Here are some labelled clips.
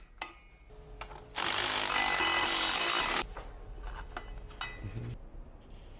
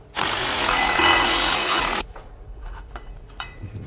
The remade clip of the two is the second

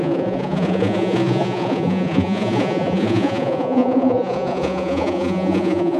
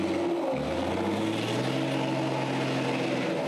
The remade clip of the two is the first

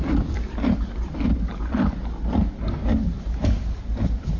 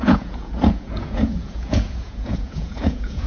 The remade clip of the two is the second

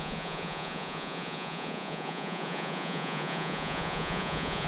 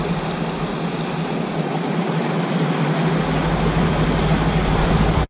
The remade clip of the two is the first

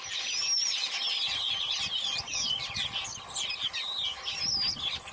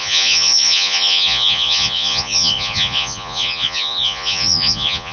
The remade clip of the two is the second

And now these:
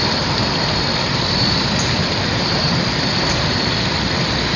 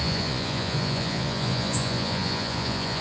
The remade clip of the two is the second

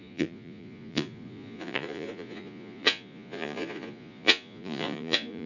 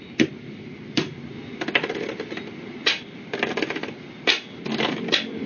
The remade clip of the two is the first